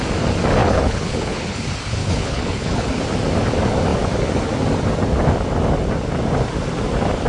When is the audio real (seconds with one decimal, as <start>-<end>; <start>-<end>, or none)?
0.0-0.6; 1.6-2.0; 2.9-7.3